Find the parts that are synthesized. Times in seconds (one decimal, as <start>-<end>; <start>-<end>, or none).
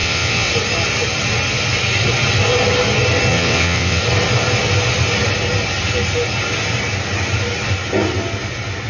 0.0-0.5; 3.3-4.0